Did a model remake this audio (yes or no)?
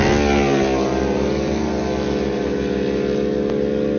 no